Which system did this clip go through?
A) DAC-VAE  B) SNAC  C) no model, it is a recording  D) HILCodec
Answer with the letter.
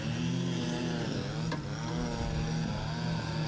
C